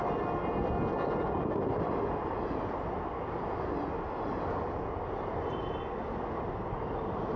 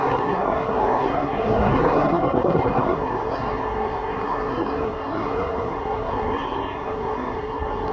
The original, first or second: first